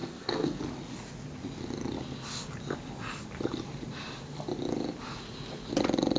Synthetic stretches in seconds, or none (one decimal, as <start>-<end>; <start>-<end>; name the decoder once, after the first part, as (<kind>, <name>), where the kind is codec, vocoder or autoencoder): 0.0-0.6 (codec, SNAC)